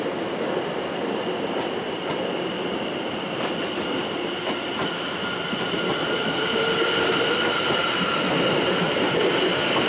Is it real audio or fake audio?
real